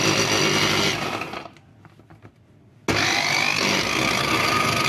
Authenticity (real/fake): real